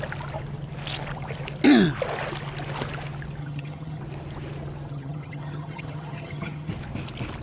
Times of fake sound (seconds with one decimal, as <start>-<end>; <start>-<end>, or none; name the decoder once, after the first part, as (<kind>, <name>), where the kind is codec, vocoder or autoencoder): 3.4-4.0 (vocoder, HiFi-GAN); 4.9-6.7